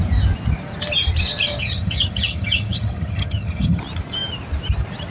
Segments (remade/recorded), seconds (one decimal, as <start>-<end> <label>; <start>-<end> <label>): 0.0-1.6 recorded; 1.6-3.8 remade; 3.8-5.1 recorded